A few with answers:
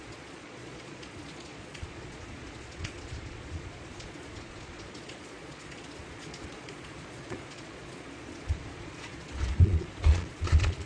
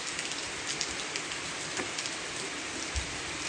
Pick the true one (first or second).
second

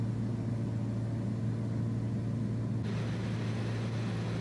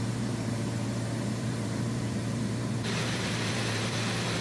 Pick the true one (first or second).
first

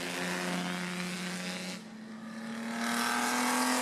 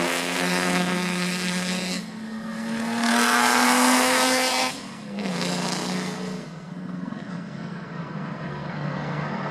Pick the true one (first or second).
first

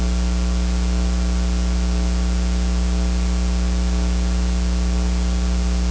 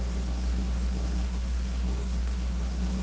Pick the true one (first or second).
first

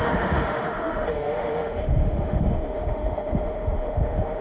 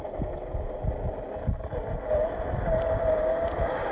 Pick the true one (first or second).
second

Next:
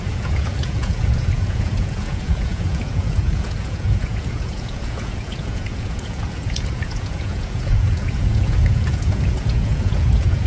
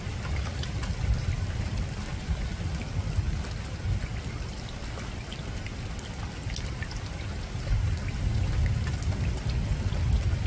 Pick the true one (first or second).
second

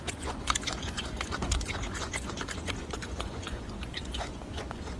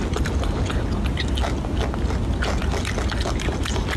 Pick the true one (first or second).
second